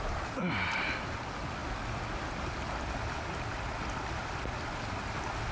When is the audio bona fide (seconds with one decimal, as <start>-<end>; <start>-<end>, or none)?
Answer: 0.0-5.5